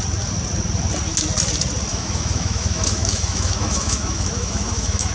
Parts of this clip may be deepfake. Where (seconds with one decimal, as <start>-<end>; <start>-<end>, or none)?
1.9-5.1